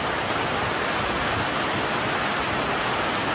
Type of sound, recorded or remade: recorded